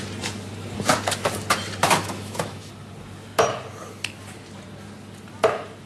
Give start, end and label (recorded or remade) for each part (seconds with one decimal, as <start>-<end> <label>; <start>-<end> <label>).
0.0-1.8 recorded; 1.8-2.7 remade; 2.7-5.9 recorded